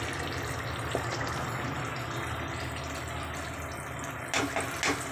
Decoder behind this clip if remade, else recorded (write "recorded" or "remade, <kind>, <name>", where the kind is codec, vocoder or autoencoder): recorded